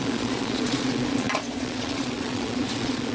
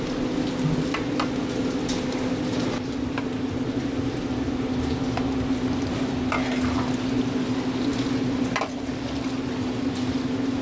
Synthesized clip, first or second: first